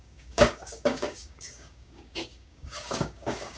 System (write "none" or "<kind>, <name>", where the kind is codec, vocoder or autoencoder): codec, DAC